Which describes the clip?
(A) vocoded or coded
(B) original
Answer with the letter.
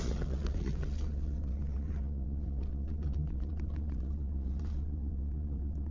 A